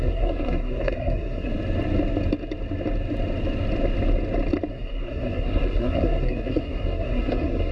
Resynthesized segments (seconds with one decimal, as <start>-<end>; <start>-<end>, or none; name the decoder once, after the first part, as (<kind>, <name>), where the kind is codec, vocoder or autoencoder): 0.0-1.5 (codec, SNAC); 4.7-7.7

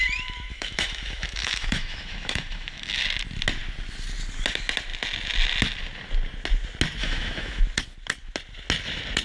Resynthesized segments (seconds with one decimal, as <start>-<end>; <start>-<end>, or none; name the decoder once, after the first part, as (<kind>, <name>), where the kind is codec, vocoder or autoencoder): 0.5-3.0 (autoencoder, DAC-VAE); 7.0-7.6

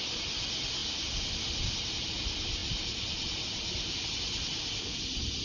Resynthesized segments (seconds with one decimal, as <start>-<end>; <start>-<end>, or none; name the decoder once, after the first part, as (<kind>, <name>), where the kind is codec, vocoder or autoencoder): none

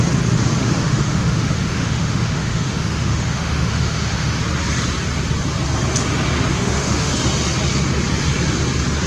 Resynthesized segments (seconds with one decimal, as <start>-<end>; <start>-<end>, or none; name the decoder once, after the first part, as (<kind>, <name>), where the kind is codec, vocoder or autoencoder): 0.6-4.4 (autoencoder, DAC-VAE); 6.5-7.1